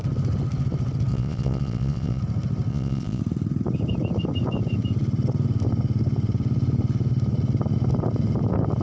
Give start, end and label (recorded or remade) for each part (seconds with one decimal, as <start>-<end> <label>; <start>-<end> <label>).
0.0-1.1 recorded; 1.1-2.2 remade; 2.2-2.7 recorded; 2.7-3.2 remade; 3.2-8.8 recorded

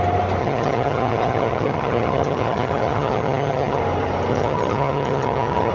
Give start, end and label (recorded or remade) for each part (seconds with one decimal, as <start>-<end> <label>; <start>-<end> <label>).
0.0-0.4 recorded; 0.4-3.8 remade; 3.8-4.3 recorded; 4.3-5.7 remade

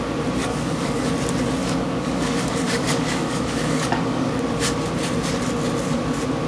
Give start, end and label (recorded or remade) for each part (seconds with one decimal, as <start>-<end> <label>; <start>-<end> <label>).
0.0-0.4 recorded; 0.4-1.1 remade; 1.1-1.6 recorded; 1.6-4.4 remade; 4.4-6.5 recorded

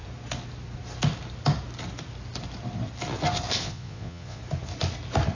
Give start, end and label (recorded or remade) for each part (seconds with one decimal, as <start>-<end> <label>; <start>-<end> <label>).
0.0-3.6 recorded; 3.6-4.4 remade; 4.4-5.3 recorded

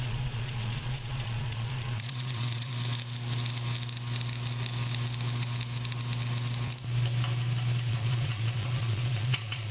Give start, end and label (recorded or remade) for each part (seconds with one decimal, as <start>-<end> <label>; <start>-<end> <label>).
0.0-2.7 remade; 2.7-7.9 recorded; 7.9-9.7 remade

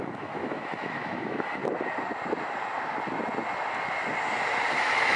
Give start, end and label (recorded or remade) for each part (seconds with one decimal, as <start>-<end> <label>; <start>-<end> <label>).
0.0-1.6 remade; 1.6-4.7 recorded; 4.7-5.2 remade

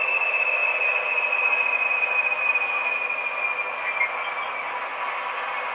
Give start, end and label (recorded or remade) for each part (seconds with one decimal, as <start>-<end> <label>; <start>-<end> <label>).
0.0-5.7 recorded

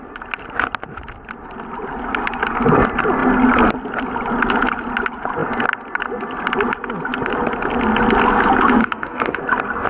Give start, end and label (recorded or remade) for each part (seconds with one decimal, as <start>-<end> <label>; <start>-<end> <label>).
0.0-8.8 recorded; 8.8-9.4 remade; 9.4-9.9 recorded